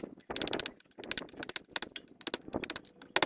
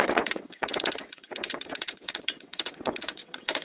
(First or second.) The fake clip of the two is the second